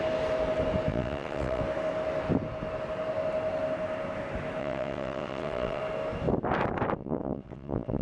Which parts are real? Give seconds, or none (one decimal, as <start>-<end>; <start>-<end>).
0.0-0.9; 1.6-4.6; 5.8-7.0

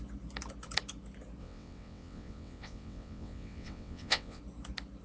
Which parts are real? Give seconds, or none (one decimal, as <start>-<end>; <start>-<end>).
0.0-1.4; 4.4-5.0

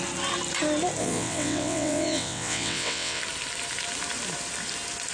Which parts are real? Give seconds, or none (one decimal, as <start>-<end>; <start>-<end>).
0.0-1.0; 3.2-5.1

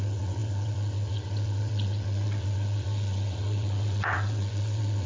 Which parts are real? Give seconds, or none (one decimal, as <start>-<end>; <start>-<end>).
none